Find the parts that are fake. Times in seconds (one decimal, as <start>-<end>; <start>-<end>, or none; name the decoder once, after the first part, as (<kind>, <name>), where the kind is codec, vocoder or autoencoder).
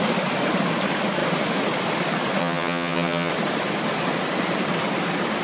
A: 2.4-3.3 (vocoder, HiFi-GAN)